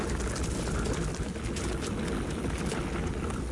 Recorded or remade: recorded